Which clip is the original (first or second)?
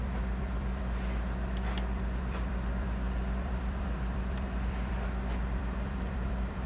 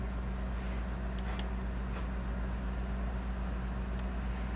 second